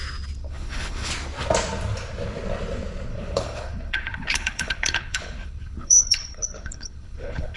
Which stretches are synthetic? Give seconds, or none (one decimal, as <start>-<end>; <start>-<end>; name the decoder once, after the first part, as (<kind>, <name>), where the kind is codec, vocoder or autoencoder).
0.4-1.1 (codec, HILCodec); 3.1-7.6